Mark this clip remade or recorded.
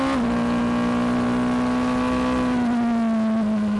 recorded